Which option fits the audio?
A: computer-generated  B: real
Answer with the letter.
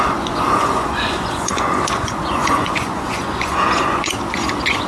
A